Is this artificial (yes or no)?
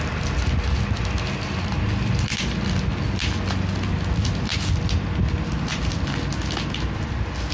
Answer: no